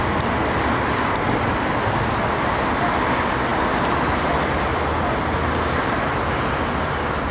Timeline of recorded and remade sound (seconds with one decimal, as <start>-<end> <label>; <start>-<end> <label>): 0.0-7.3 recorded